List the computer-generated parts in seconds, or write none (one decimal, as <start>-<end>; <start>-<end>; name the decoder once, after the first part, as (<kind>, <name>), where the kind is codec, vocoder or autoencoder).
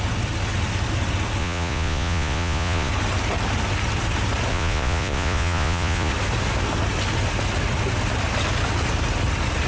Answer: 1.4-2.9 (vocoder, Vocos); 4.5-6.1